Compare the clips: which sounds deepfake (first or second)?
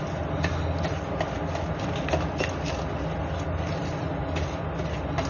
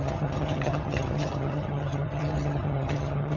second